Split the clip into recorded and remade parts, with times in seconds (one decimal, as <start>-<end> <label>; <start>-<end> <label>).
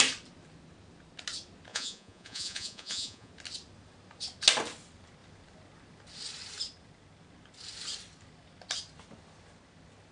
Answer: 0.0-1.7 recorded; 1.7-3.3 remade; 3.3-10.1 recorded